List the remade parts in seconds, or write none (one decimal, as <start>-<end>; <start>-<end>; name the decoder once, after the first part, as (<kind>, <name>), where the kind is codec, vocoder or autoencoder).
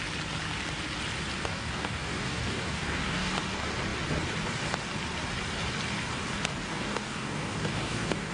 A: 1.5-3.3 (codec, DAC); 6.7-8.3